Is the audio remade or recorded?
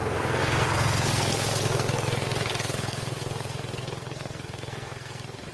remade